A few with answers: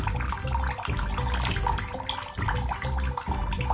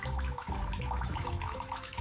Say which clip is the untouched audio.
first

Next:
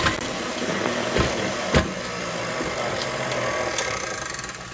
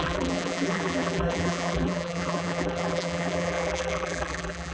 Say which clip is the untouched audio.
first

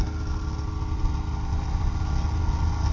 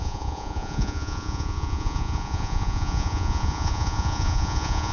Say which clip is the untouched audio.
first